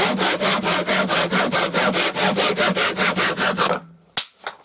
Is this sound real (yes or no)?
yes